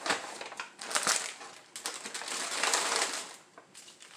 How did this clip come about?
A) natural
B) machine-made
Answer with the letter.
A